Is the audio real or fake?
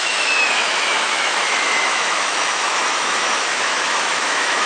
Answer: fake